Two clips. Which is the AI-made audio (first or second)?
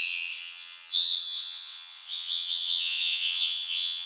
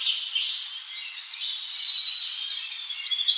first